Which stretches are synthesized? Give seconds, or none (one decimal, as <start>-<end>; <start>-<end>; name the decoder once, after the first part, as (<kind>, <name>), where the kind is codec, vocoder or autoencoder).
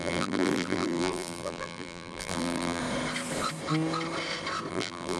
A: 0.0-2.8 (vocoder, BigVGAN v2); 4.7-5.2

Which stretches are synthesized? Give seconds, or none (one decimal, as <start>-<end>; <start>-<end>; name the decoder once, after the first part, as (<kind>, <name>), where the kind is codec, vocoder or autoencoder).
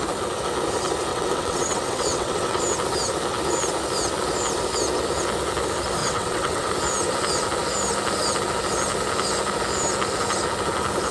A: 1.1-2.6 (vocoder, WaveNeXt); 6.0-6.7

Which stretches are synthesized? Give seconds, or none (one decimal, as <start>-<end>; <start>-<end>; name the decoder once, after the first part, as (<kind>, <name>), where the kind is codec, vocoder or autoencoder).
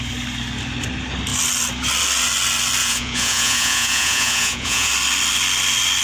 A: 2.8-4.9 (vocoder, Vocos)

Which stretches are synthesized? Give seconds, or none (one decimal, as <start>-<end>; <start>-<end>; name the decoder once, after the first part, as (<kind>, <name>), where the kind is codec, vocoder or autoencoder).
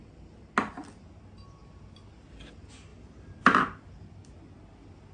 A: none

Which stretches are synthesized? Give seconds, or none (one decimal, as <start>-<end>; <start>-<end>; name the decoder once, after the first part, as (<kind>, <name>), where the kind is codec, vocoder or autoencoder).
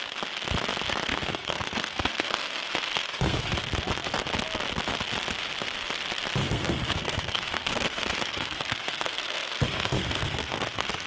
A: 1.1-3.5 (codec, SNAC); 6.4-11.1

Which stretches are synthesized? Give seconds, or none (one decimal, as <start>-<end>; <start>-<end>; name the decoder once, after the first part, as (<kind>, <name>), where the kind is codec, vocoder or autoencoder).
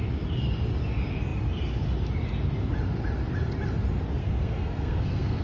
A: 4.2-5.4 (codec, SNAC)